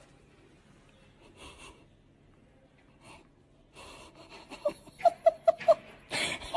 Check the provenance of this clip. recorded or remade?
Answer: recorded